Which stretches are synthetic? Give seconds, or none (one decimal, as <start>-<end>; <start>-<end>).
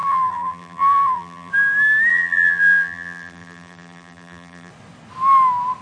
0.0-1.5; 2.1-4.7